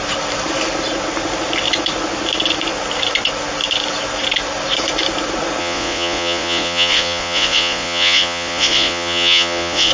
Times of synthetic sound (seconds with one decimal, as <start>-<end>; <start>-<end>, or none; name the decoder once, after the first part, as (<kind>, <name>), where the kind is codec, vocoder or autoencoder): 5.6-9.9 (vocoder, Vocos)